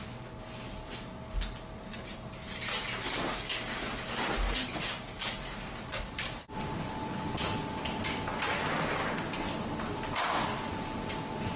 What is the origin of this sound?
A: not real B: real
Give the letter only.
B